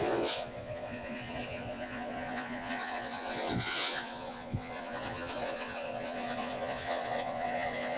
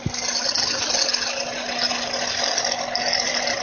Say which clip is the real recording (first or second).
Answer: second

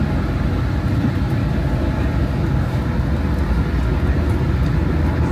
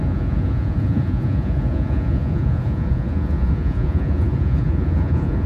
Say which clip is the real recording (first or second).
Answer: first